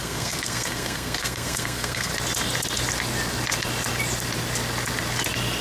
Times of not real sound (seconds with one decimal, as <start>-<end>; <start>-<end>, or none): 0.0-2.1